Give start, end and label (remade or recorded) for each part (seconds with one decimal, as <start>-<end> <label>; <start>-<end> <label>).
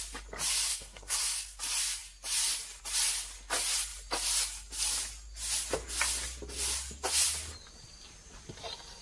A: 0.0-0.7 recorded; 0.7-1.6 remade; 1.6-9.0 recorded